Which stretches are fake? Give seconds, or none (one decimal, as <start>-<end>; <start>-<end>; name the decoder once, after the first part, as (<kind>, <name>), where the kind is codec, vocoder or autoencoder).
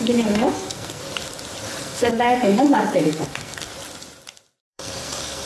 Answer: 0.0-1.0 (codec, SNAC); 1.8-3.7; 4.6-5.5